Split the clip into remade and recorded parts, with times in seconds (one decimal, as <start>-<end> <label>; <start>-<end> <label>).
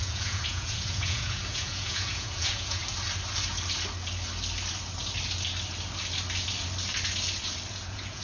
0.0-2.8 remade; 2.8-7.7 recorded; 7.7-8.2 remade